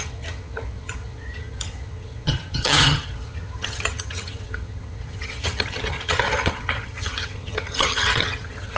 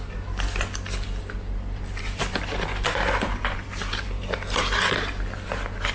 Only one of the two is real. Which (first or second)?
second